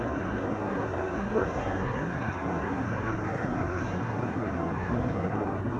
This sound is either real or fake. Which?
fake